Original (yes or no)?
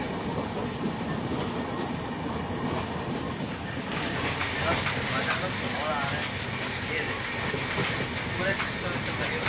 yes